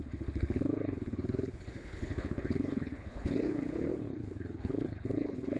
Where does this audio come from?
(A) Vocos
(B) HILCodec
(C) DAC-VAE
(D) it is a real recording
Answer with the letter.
B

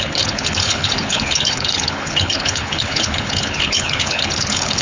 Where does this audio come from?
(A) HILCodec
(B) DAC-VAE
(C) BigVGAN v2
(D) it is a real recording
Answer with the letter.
A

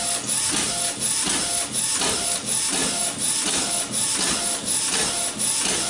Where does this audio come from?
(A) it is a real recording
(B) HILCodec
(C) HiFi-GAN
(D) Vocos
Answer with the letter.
A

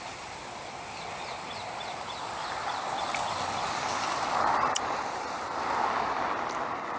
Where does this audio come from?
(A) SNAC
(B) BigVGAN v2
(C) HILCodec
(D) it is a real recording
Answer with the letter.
D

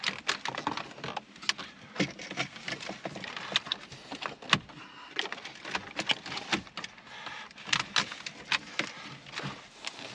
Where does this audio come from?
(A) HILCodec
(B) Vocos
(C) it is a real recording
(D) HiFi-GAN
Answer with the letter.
C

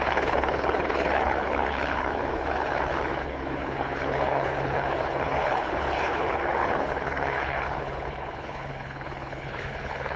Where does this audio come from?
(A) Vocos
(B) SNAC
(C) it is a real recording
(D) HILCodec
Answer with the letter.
D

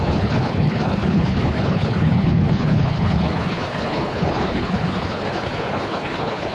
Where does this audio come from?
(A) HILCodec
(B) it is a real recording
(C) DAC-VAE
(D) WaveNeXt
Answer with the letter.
A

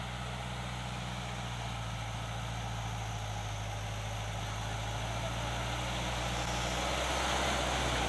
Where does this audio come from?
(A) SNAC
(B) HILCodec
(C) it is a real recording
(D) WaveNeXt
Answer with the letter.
C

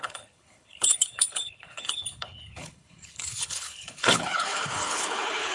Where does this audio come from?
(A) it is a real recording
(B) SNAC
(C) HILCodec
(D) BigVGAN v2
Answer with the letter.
C